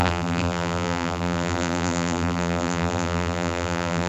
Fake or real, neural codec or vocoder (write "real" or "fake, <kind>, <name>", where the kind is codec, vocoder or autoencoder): fake, vocoder, BigVGAN v2